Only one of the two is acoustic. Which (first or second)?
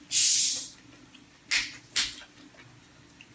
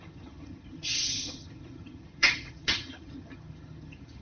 first